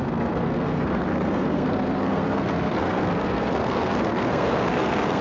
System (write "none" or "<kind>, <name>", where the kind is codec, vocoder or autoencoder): codec, SNAC